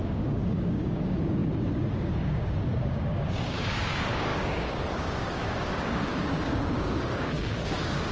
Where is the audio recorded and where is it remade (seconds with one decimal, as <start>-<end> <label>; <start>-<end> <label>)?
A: 0.0-8.1 remade